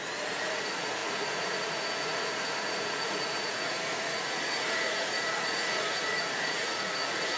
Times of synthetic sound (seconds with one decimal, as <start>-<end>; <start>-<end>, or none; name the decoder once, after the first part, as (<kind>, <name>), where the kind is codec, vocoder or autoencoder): 0.0-7.4 (vocoder, Vocos)